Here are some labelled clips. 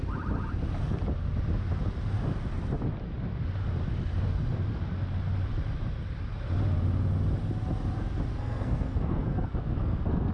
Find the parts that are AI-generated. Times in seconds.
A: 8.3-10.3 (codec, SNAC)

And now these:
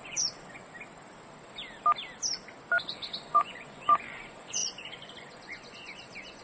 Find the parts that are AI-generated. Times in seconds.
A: 0.0-0.6 (vocoder, Vocos); 2.8-6.4

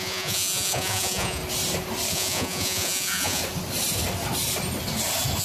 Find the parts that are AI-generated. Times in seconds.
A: 0.0-1.4 (vocoder, Vocos); 2.1-3.4

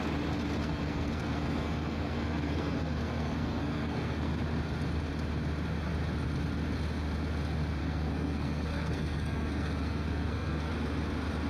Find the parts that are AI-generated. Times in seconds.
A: 0.6-4.4 (codec, SNAC); 7.8-10.7

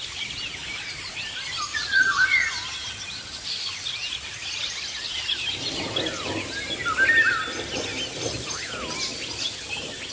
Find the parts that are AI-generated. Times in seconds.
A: 1.7-2.5 (vocoder, Vocos)

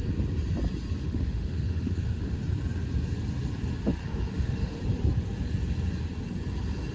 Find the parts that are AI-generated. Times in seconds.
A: 1.0-2.4 (autoencoder, DAC-VAE); 4.0-4.8